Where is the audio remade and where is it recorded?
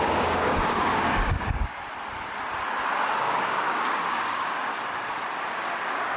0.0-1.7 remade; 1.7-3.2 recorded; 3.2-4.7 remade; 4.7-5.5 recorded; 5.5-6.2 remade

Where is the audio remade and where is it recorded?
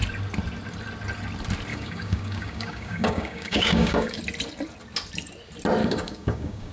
0.0-1.7 recorded; 1.7-4.2 remade; 4.2-5.8 recorded; 5.8-6.7 remade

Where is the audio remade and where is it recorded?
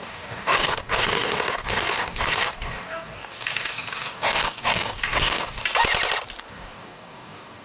0.0-5.6 remade; 5.6-6.5 recorded; 6.5-7.6 remade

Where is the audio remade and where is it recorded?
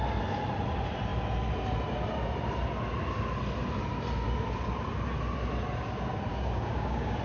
0.0-6.3 recorded; 6.3-7.2 remade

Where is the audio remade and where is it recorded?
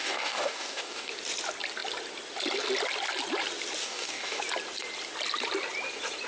0.0-1.1 remade; 1.1-3.8 recorded; 3.8-4.4 remade; 4.4-6.3 recorded